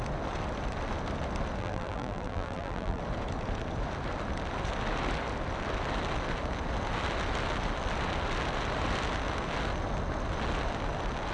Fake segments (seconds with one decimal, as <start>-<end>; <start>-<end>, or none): 1.6-3.0